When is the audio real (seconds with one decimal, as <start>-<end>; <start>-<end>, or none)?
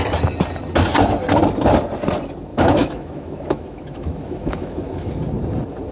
0.0-2.5; 5.1-5.9